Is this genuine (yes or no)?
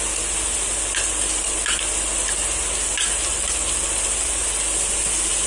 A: yes